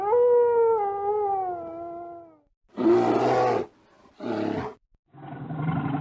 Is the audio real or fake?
real